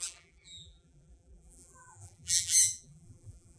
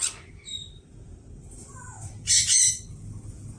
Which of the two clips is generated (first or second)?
first